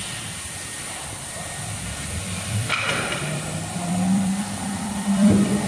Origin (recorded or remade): remade